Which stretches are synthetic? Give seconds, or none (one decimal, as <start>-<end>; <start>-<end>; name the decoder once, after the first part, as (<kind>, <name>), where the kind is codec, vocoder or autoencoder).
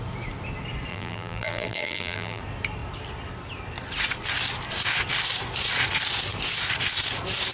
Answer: 0.9-2.4 (vocoder, BigVGAN v2)